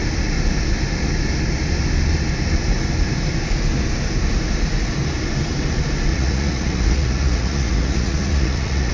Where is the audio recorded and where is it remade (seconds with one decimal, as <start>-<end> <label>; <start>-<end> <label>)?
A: 0.0-6.1 recorded; 6.1-8.9 remade